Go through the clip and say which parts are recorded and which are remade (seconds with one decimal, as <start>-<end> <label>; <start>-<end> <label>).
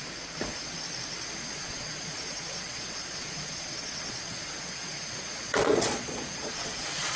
0.0-1.5 recorded; 1.5-7.2 remade